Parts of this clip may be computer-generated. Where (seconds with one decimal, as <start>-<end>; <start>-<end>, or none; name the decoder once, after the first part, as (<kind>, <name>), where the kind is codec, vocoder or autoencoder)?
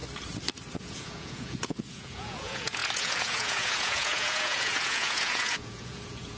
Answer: 0.8-6.4 (vocoder, Vocos)